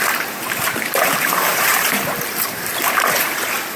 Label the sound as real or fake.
fake